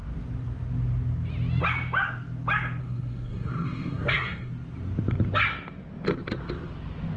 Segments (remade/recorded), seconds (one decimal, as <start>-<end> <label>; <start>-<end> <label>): 0.0-2.8 recorded; 2.8-4.5 remade; 4.5-7.2 recorded